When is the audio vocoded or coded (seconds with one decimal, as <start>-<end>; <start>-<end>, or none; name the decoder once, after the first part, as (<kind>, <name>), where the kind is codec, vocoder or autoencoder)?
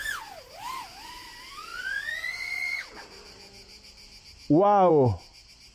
none